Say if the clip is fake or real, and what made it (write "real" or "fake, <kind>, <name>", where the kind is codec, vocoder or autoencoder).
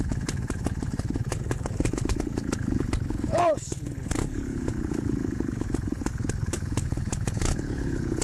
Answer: fake, codec, HILCodec